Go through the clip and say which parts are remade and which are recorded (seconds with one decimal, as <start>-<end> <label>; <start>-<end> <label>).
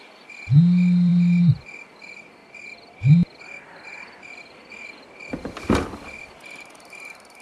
0.0-7.4 recorded